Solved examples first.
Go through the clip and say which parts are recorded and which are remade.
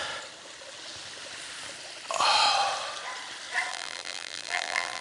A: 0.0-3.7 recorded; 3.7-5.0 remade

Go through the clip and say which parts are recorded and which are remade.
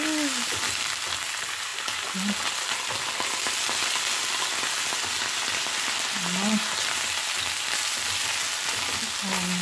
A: 0.0-9.6 recorded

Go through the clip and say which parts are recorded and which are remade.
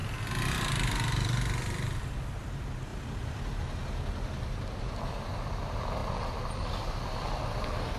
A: 0.0-2.9 recorded; 2.9-3.5 remade; 3.5-8.0 recorded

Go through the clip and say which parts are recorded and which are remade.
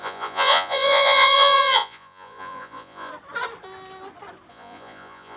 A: 0.0-3.1 remade; 3.1-4.5 recorded; 4.5-5.4 remade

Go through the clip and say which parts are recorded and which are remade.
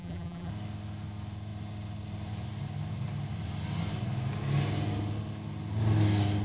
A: 0.0-0.5 remade; 0.5-6.4 recorded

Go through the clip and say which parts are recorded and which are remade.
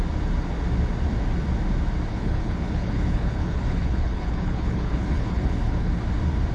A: 0.0-2.1 recorded; 2.1-6.0 remade; 6.0-6.5 recorded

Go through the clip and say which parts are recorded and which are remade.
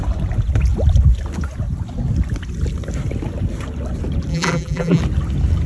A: 0.0-4.3 recorded; 4.3-5.0 remade; 5.0-5.7 recorded